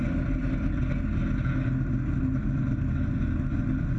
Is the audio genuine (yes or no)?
yes